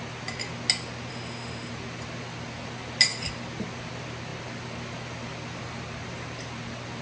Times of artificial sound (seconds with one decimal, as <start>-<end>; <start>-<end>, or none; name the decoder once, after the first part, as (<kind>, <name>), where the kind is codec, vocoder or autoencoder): 1.1-1.7 (autoencoder, DAC-VAE)

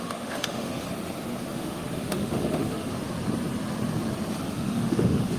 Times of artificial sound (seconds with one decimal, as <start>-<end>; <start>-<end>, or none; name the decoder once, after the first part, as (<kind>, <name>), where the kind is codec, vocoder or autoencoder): 0.0-0.7 (autoencoder, DAC-VAE); 1.4-3.0; 4.5-5.4

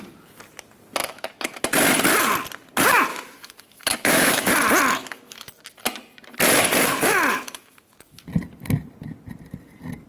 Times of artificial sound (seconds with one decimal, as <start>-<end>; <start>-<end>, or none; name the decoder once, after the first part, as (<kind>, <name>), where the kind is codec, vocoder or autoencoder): 1.0-1.6 (autoencoder, DAC-VAE); 3.1-4.5; 5.0-5.6; 7.3-8.2

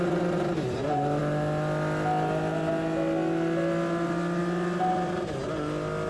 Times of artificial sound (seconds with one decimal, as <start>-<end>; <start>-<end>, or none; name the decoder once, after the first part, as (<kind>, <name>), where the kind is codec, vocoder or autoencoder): none

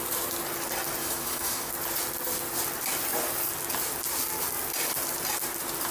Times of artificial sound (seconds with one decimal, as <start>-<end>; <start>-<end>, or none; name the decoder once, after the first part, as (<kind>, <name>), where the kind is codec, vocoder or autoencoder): 1.0-1.7 (autoencoder, DAC-VAE)